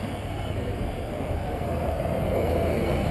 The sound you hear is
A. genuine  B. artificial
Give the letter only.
B